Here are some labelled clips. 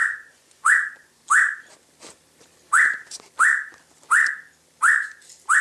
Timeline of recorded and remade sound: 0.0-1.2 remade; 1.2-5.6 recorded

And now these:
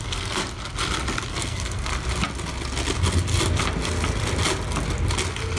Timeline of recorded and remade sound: 0.0-0.4 remade; 0.4-1.3 recorded; 1.3-1.9 remade; 1.9-5.6 recorded